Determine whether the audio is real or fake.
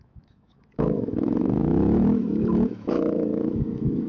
fake